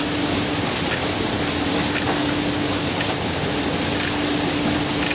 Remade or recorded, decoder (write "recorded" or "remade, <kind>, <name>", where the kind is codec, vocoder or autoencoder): recorded